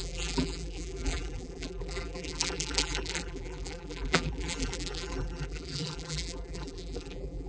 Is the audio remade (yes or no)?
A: yes